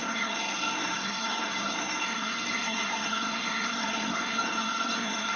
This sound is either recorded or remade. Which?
remade